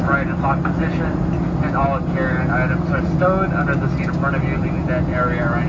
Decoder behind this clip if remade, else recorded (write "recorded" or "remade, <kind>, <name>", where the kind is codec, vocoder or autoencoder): recorded